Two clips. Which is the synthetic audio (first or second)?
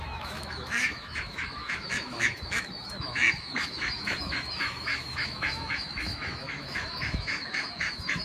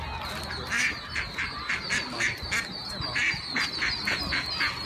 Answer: first